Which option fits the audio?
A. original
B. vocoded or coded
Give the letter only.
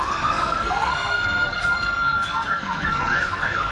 B